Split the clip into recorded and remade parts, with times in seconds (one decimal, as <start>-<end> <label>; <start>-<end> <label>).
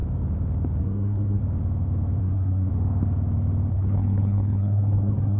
0.0-0.8 recorded; 0.8-1.4 remade; 1.4-2.2 recorded; 2.2-2.7 remade; 2.7-3.7 recorded; 3.7-5.4 remade